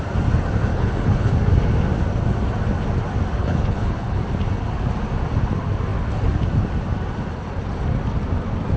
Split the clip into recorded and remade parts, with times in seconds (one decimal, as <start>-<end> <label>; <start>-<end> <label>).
0.0-0.7 recorded; 0.7-1.3 remade; 1.3-3.4 recorded; 3.4-4.2 remade; 4.2-8.8 recorded